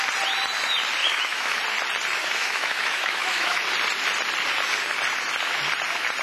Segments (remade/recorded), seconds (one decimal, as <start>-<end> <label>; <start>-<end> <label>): 0.0-1.0 recorded; 1.0-1.6 remade; 1.6-2.2 recorded; 2.2-3.6 remade; 3.6-6.2 recorded